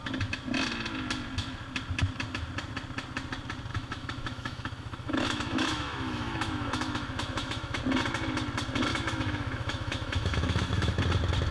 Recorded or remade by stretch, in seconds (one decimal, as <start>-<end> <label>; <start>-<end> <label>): 0.0-3.7 recorded; 3.7-7.8 remade; 7.8-8.9 recorded; 8.9-11.0 remade; 11.0-11.5 recorded